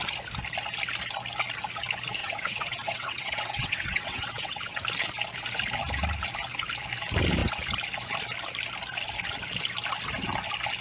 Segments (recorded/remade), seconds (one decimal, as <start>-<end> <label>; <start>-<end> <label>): 0.0-2.2 recorded; 2.2-4.8 remade; 4.8-10.8 recorded